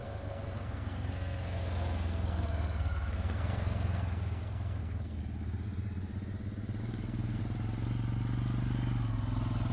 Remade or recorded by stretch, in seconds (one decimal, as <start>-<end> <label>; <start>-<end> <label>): 0.0-5.2 remade; 5.2-6.8 recorded; 6.8-7.4 remade; 7.4-9.7 recorded